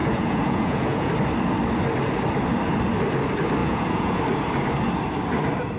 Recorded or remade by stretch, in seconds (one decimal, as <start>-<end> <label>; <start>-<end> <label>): 0.0-1.1 remade; 1.1-3.6 recorded; 3.6-4.2 remade; 4.2-5.8 recorded